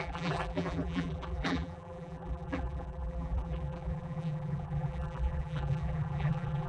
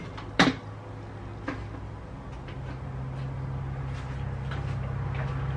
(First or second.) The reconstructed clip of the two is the first